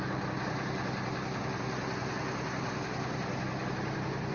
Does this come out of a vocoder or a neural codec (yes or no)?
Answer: no